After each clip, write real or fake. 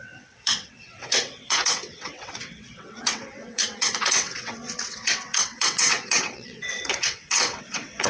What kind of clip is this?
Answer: fake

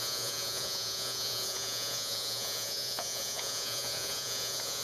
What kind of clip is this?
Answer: fake